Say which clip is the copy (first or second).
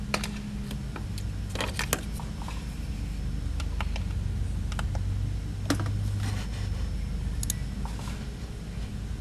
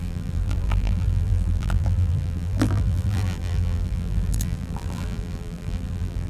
second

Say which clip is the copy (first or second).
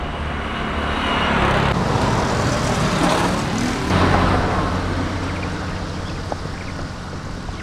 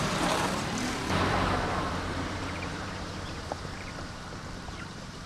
second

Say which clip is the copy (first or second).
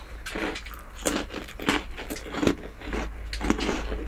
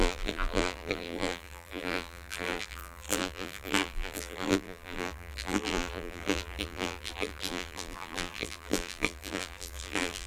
second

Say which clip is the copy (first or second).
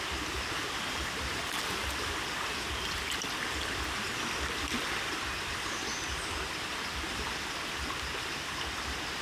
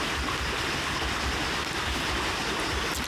first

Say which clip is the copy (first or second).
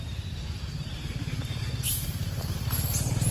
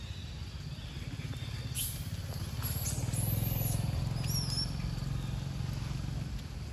first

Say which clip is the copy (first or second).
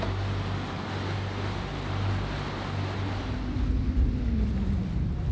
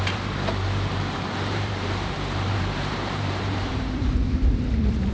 second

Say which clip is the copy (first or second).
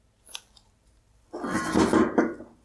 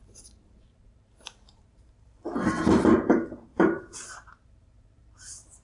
second